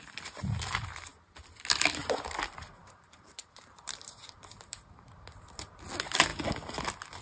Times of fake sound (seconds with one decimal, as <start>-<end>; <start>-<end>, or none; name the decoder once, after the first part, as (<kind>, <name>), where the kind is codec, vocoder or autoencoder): 2.8-5.1 (vocoder, BigVGAN v2)